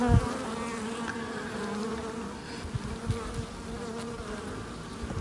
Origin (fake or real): real